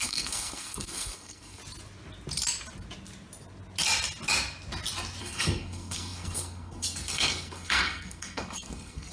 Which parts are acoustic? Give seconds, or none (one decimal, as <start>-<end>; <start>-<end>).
1.6-5.2